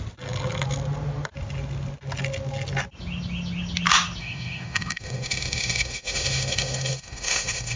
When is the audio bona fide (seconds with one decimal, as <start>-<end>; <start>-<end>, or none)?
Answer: 0.0-4.2